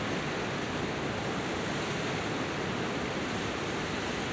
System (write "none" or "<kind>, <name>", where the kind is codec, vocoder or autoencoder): none